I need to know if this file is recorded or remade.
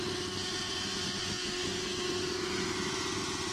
recorded